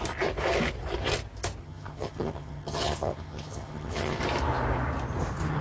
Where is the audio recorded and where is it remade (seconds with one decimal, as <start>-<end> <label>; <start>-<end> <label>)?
0.0-1.6 recorded; 1.6-4.2 remade; 4.2-5.6 recorded

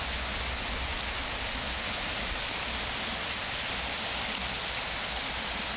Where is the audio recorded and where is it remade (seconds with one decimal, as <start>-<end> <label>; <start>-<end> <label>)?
0.0-0.9 remade; 0.9-1.6 recorded; 1.6-2.1 remade; 2.1-5.8 recorded

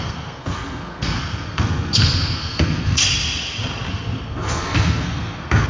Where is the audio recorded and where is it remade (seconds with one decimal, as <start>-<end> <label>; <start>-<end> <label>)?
0.0-3.0 remade; 3.0-3.9 recorded; 3.9-5.7 remade

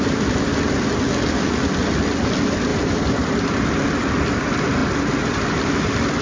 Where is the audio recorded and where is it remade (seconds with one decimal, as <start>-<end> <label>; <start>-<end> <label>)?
0.0-2.7 recorded; 2.7-4.0 remade; 4.0-6.2 recorded

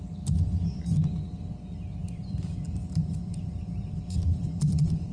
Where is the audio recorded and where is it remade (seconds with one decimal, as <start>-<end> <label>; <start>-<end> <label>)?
0.0-2.0 recorded; 2.0-5.1 remade